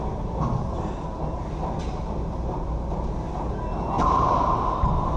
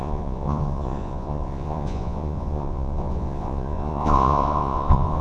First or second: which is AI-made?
second